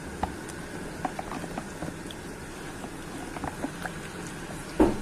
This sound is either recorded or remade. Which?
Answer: recorded